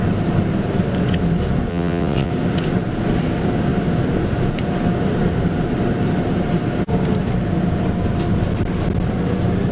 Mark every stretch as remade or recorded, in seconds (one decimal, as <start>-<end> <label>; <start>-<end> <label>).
0.0-1.7 recorded; 1.7-2.3 remade; 2.3-9.7 recorded